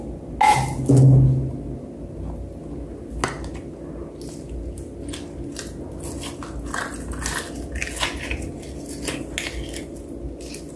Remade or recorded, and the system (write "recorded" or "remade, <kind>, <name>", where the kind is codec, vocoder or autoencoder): recorded